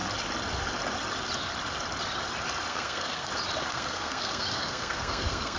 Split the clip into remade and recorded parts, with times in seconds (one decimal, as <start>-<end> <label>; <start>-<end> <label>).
0.0-2.7 recorded; 2.7-3.3 remade; 3.3-3.7 recorded; 3.7-5.6 remade